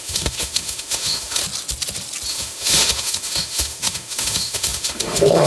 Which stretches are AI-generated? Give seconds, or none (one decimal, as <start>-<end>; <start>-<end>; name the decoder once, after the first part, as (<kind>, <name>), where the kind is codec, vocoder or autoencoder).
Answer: 0.0-1.4 (autoencoder, DAC-VAE); 2.3-5.5